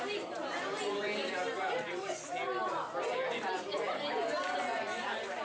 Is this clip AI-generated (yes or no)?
no